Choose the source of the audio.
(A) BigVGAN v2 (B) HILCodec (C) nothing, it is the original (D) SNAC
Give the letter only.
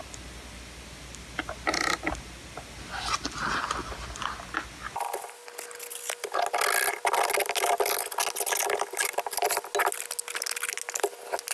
C